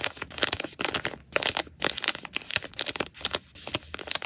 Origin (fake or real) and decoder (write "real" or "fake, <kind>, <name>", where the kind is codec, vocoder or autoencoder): real